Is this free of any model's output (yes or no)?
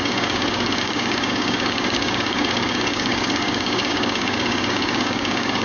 no